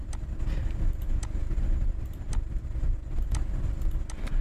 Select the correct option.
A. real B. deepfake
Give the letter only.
A